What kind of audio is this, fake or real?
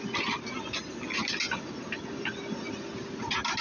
real